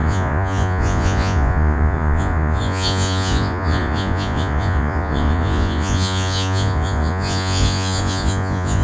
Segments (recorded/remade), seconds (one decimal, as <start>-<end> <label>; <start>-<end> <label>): 0.0-8.8 remade